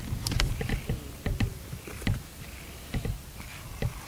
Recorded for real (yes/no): yes